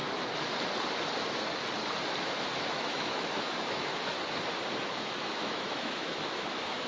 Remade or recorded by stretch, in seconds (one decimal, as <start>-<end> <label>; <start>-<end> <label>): 0.0-2.2 recorded; 2.2-4.1 remade; 4.1-4.8 recorded; 4.8-6.9 remade